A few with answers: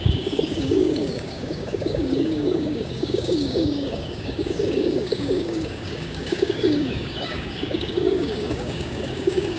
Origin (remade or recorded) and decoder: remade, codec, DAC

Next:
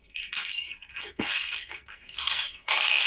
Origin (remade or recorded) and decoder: remade, codec, SNAC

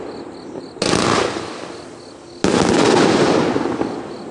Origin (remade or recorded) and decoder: recorded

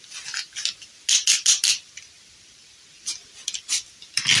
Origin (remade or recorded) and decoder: recorded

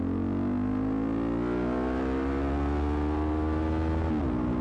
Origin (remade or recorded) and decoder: recorded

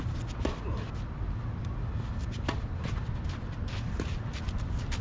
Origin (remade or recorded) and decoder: recorded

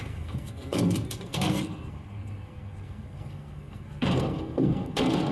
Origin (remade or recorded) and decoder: remade, codec, SNAC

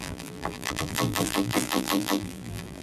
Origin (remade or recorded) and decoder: remade, vocoder, BigVGAN v2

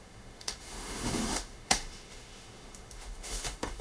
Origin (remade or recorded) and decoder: remade, autoencoder, DAC-VAE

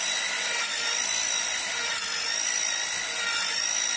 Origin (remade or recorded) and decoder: recorded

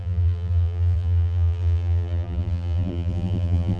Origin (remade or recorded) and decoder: remade, vocoder, BigVGAN v2